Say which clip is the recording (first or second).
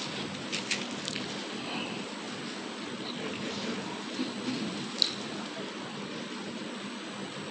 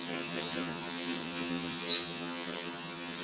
first